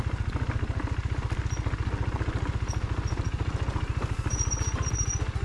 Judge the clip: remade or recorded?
recorded